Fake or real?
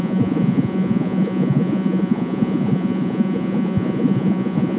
fake